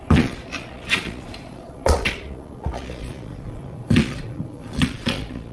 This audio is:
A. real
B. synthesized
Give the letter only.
B